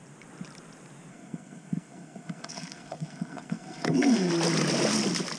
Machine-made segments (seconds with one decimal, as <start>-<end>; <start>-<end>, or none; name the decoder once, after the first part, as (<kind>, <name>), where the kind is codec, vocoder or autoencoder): 1.1-4.3 (codec, SNAC)